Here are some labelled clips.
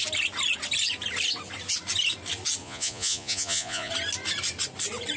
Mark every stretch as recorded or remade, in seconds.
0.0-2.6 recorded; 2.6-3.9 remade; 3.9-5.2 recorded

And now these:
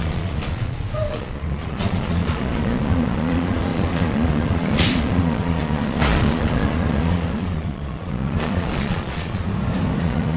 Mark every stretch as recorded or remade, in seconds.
0.0-9.5 remade; 9.5-10.0 recorded; 10.0-10.4 remade

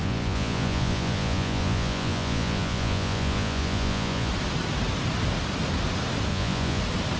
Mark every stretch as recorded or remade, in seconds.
0.0-4.3 remade; 4.3-6.3 recorded; 6.3-6.8 remade; 6.8-7.2 recorded

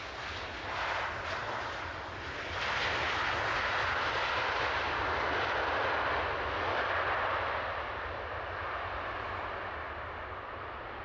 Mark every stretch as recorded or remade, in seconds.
0.0-11.0 recorded

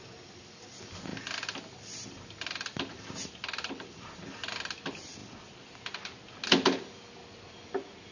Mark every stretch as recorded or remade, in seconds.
0.0-8.1 recorded